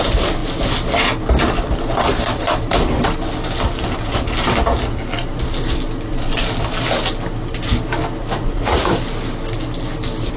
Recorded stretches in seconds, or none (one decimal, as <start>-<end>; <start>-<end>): 0.0-8.2; 8.9-10.4